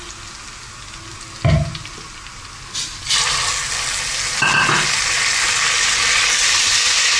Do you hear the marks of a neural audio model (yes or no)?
no